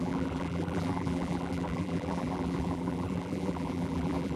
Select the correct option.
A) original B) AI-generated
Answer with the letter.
B